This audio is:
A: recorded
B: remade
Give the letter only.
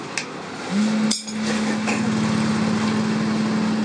A